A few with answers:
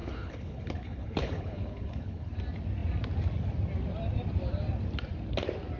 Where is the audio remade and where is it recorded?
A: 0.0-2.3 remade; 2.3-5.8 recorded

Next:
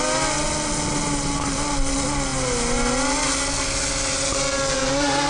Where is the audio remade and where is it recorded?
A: 0.0-5.3 recorded

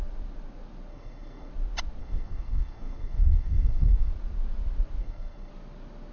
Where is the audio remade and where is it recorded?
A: 0.0-0.9 recorded; 0.9-1.5 remade; 1.5-2.0 recorded; 2.0-4.1 remade; 4.1-5.0 recorded; 5.0-5.5 remade; 5.5-6.1 recorded

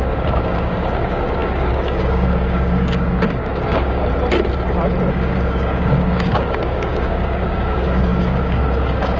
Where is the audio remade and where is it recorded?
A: 0.0-4.0 remade; 4.0-5.1 recorded; 5.1-9.2 remade

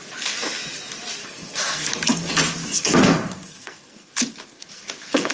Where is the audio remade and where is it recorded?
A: 0.0-1.2 recorded; 1.2-1.9 remade; 1.9-2.7 recorded; 2.7-4.1 remade; 4.1-4.5 recorded; 4.5-5.3 remade